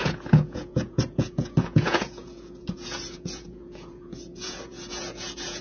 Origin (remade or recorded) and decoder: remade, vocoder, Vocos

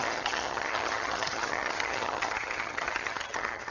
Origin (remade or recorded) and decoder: remade, vocoder, HiFi-GAN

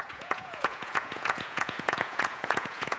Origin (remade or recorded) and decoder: remade, vocoder, Vocos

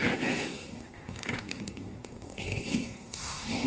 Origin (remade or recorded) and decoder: remade, codec, SNAC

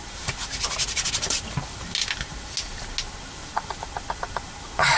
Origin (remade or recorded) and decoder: recorded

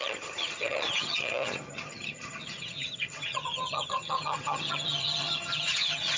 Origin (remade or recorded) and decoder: remade, vocoder, HiFi-GAN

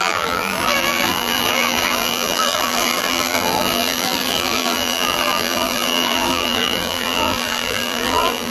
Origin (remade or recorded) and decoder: remade, vocoder, BigVGAN v2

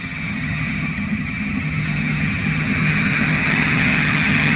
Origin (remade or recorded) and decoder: remade, vocoder, HiFi-GAN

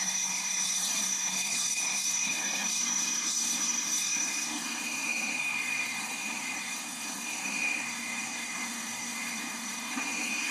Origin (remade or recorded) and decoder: remade, codec, SNAC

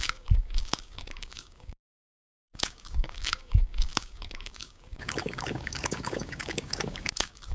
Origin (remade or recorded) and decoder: remade, codec, DAC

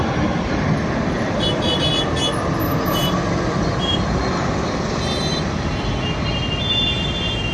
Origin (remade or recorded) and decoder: recorded